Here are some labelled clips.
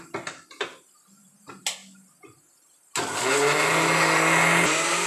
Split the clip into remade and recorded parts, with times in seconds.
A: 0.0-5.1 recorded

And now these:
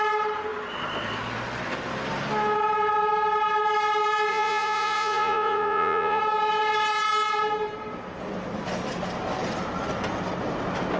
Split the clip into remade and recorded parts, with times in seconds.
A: 0.0-4.3 recorded; 4.3-6.2 remade; 6.2-11.0 recorded